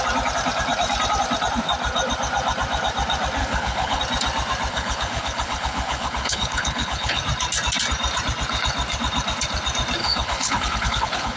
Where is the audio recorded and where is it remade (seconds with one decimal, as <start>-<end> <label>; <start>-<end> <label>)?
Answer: 0.0-3.4 recorded; 3.4-4.0 remade; 4.0-4.7 recorded; 4.7-7.2 remade; 7.2-10.0 recorded; 10.0-11.4 remade